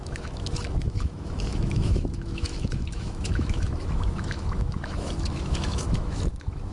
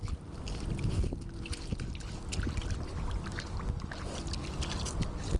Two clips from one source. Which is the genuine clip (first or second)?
second